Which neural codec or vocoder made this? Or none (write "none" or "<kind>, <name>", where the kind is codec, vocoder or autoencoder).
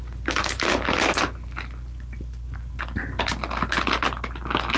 none